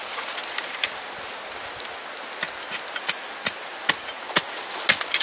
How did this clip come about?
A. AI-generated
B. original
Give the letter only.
B